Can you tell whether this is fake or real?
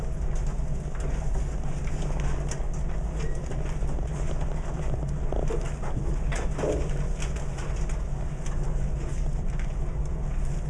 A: real